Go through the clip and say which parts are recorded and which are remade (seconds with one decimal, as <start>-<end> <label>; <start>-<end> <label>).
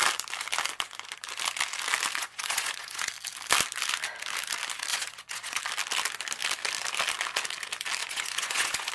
0.0-2.2 recorded; 2.2-3.1 remade; 3.1-4.9 recorded; 4.9-5.6 remade; 5.6-8.0 recorded; 8.0-8.9 remade